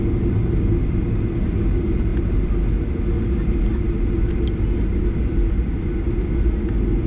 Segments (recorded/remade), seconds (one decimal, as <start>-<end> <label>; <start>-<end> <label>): 0.0-7.1 recorded